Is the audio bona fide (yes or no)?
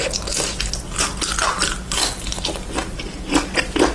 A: yes